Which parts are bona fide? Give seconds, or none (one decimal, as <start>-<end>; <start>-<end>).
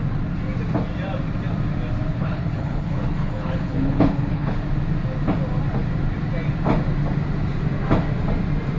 0.0-2.1; 4.6-8.8